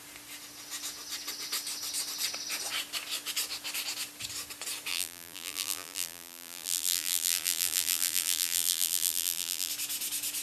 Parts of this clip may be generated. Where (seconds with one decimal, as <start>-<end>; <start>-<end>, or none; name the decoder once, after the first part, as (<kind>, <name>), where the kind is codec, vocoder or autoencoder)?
4.9-9.7 (vocoder, BigVGAN v2)